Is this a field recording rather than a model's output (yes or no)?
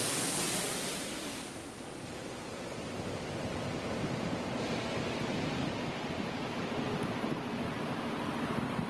yes